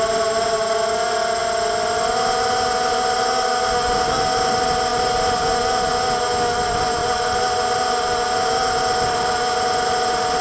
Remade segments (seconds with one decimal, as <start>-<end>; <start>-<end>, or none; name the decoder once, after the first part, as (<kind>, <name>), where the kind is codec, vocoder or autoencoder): none